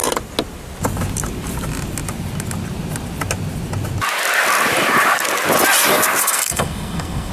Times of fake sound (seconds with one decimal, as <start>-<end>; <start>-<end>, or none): 6.2-7.3